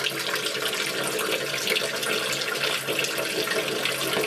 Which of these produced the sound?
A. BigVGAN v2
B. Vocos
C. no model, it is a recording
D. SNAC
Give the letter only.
C